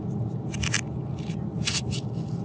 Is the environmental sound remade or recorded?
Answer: recorded